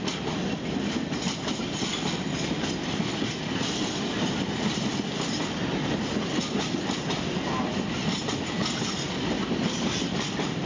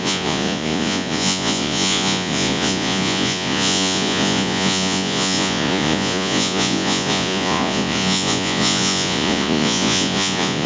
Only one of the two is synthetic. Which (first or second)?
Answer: second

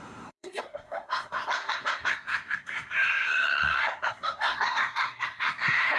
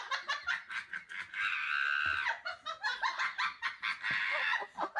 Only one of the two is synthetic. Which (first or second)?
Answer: first